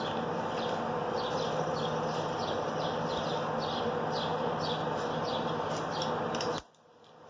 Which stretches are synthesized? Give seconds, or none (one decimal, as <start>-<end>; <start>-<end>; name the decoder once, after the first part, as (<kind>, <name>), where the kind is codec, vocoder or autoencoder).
none